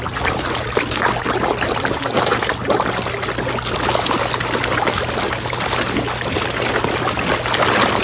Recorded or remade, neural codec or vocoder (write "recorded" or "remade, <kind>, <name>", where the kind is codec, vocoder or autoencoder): recorded